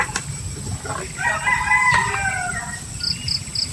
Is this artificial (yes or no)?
no